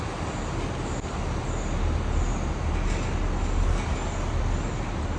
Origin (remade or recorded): recorded